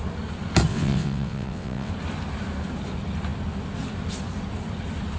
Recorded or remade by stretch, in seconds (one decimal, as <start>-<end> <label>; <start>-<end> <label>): 0.0-0.7 recorded; 0.7-1.9 remade; 1.9-5.2 recorded